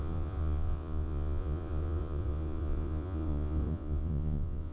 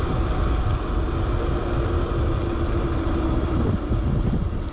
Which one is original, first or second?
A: second